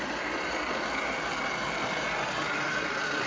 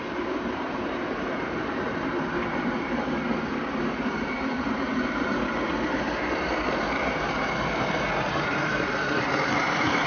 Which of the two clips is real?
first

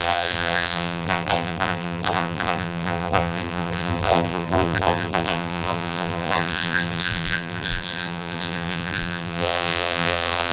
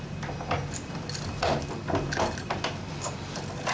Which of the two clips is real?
second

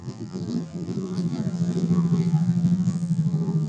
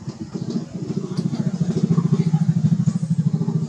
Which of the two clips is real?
second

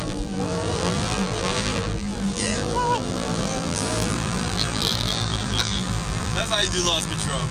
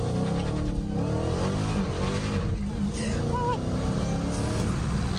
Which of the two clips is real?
second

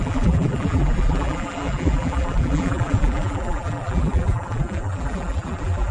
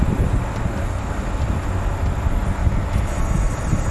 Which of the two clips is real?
second